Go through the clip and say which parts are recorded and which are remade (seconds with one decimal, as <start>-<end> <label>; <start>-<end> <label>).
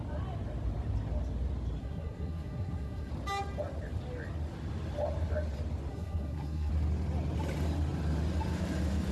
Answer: 0.0-1.8 recorded; 1.8-3.1 remade; 3.1-5.9 recorded; 5.9-6.7 remade; 6.7-9.1 recorded